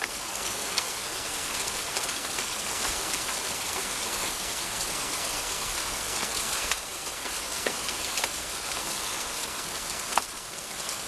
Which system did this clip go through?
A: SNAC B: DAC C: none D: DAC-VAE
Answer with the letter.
A